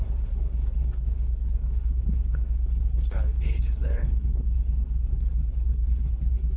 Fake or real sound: fake